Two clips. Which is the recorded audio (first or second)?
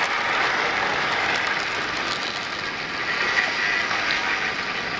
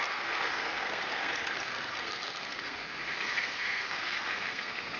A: first